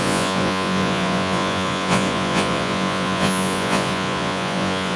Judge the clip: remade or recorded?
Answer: remade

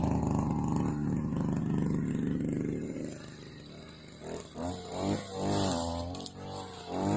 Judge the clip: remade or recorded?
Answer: recorded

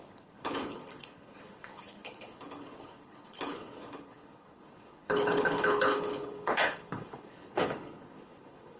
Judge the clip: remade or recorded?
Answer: remade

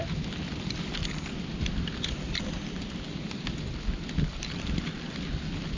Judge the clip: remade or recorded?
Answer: recorded